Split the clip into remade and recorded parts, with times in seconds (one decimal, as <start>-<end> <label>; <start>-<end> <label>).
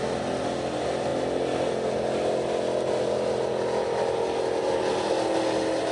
0.0-5.9 recorded